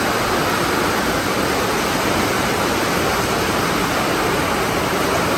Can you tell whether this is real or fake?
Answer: real